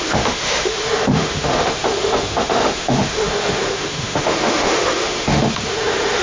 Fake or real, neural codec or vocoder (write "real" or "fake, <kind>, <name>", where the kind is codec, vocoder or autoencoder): fake, autoencoder, DAC-VAE